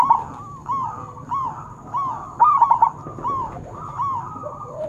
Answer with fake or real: real